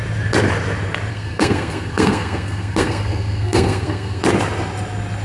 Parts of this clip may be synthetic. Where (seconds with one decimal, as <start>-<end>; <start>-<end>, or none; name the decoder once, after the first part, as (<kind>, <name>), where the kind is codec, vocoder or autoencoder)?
1.1-4.2 (codec, SNAC)